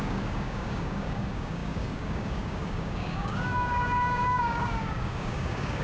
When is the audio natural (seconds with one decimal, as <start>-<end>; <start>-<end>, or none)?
none